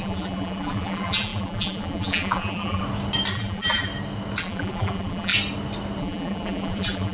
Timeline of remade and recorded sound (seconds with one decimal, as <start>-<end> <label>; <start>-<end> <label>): 0.0-2.8 remade; 2.8-3.3 recorded; 3.3-3.9 remade; 3.9-4.4 recorded; 4.4-5.3 remade; 5.3-6.0 recorded; 6.0-7.1 remade